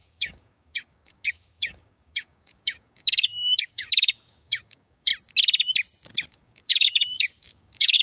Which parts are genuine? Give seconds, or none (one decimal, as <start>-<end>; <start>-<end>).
5.1-6.3